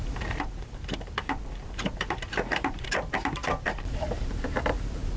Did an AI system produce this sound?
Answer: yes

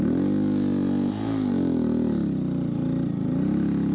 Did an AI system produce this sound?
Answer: no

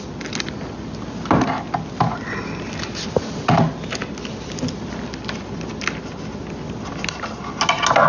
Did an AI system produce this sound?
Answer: no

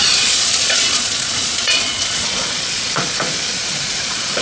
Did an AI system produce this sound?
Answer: yes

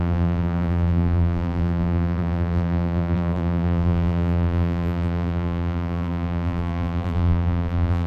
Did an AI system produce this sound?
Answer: yes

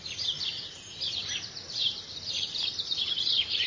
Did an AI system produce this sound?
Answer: yes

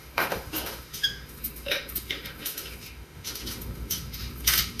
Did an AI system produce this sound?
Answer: yes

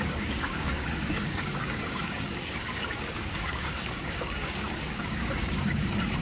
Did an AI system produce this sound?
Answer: yes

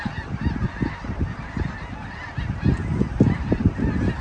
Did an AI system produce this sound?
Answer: no